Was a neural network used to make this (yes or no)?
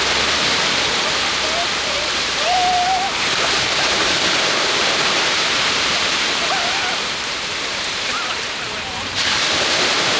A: yes